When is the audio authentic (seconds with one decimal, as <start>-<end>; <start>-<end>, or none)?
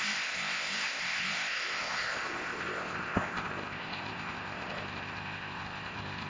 none